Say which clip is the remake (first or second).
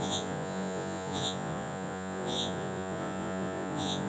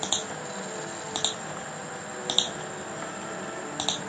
first